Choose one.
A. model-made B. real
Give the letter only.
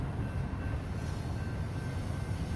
B